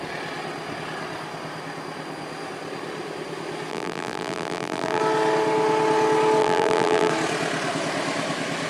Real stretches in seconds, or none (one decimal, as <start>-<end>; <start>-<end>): 0.0-3.7; 5.0-6.4; 7.1-8.7